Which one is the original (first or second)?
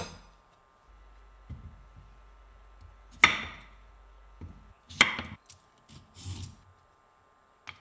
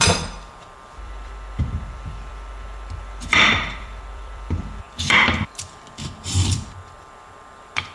first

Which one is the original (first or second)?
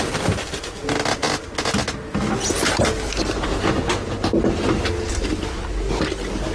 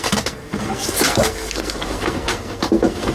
first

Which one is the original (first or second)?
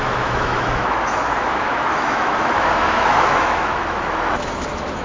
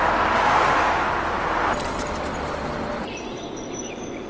second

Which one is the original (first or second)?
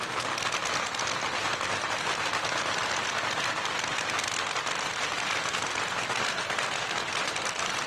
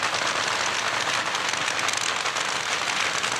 second